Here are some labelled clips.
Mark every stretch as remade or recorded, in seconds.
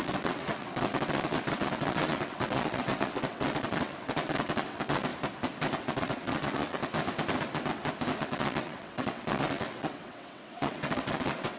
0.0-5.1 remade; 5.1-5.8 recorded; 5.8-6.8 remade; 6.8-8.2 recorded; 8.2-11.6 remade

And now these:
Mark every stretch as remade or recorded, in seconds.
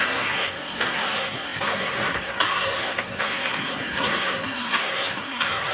0.0-5.7 remade